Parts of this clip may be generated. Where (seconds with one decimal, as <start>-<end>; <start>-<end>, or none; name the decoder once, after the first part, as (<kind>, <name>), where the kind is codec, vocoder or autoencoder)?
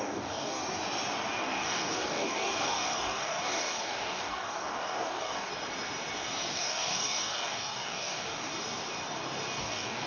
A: 0.0-0.6 (codec, DAC); 1.4-5.5; 6.5-8.5; 9.6-10.1